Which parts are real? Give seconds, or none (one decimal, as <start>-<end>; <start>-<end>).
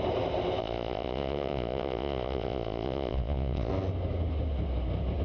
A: 0.0-0.6; 3.7-5.2